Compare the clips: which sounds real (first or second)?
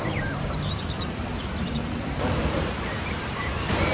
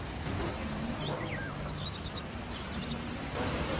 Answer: second